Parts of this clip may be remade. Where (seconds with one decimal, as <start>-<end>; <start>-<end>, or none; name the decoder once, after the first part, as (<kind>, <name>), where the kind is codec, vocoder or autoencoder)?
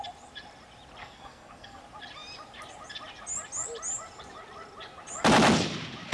1.0-1.8 (codec, SNAC)